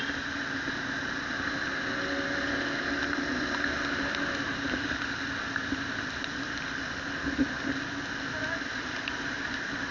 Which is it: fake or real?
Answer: real